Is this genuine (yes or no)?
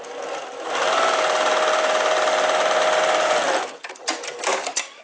yes